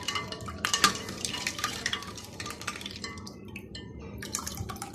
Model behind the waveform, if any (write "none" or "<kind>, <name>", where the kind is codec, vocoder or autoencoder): vocoder, BigVGAN v2